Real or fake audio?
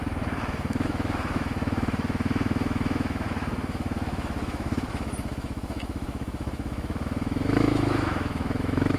fake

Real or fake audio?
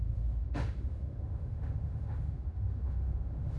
fake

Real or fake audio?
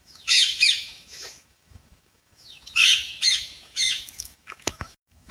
fake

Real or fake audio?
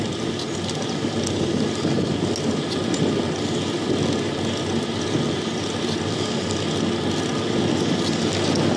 real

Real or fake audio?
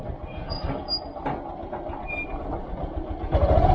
real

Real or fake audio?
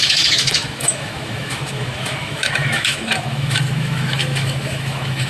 fake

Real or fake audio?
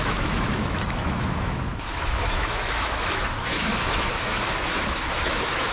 fake